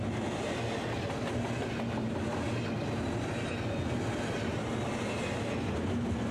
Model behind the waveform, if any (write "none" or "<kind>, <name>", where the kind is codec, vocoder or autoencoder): none